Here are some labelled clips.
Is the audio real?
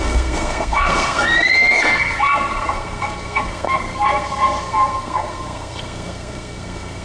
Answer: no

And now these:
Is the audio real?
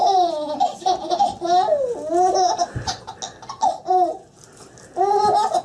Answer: yes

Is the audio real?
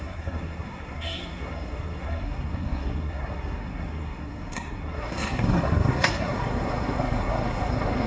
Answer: no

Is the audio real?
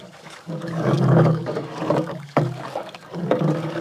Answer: no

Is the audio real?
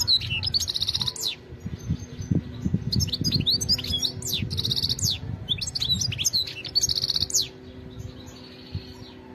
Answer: yes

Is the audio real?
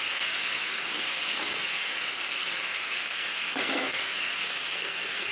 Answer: no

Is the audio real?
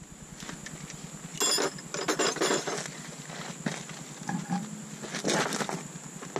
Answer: yes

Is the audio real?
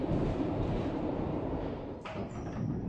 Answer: no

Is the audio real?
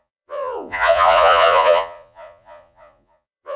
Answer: no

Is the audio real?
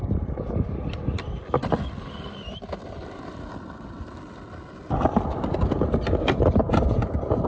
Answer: yes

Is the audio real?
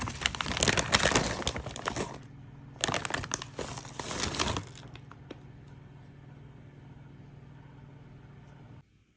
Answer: yes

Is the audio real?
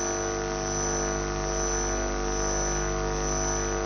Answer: yes